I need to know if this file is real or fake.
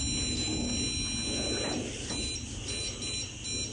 real